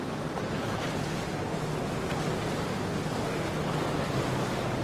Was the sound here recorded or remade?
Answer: recorded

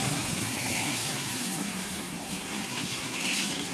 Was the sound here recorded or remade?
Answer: remade